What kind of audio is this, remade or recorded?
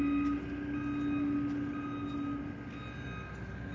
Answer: recorded